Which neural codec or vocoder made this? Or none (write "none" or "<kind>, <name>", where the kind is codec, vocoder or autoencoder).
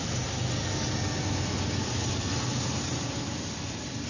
none